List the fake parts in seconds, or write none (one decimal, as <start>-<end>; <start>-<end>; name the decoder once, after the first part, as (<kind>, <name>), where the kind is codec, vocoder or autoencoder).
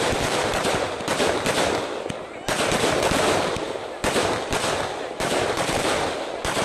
0.0-1.1 (vocoder, BigVGAN v2); 3.4-4.0; 5.2-6.6